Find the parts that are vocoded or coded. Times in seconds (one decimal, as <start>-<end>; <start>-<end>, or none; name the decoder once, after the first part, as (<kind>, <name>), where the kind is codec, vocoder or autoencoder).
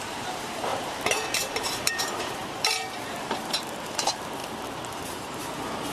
0.0-4.4 (vocoder, BigVGAN v2); 4.9-5.9